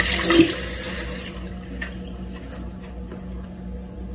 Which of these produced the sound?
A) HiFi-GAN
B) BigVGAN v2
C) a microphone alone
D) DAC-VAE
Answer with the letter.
C